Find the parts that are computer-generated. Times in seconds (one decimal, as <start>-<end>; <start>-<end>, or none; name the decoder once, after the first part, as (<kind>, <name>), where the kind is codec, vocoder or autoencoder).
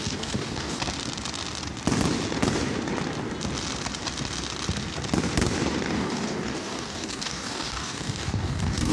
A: 0.0-0.8 (codec, DAC); 5.9-8.9